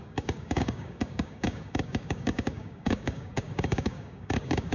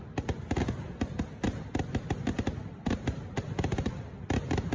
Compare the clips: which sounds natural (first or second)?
second